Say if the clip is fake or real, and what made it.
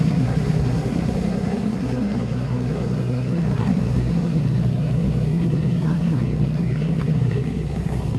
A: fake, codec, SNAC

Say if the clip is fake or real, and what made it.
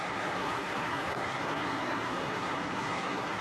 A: fake, codec, SNAC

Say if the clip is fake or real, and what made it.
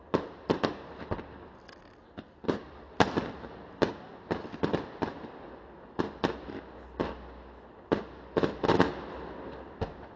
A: real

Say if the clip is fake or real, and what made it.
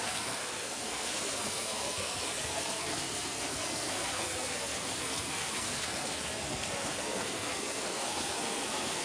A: fake, codec, SNAC